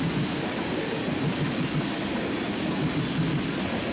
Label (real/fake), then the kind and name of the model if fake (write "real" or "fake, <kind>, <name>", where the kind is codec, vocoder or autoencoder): real